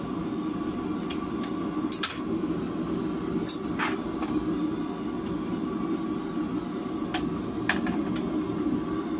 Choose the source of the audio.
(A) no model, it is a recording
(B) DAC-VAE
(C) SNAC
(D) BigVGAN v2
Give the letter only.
A